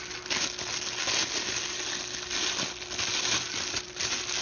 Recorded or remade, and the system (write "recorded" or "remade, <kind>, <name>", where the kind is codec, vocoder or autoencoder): recorded